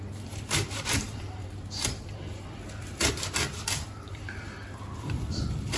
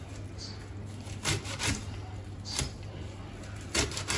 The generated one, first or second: first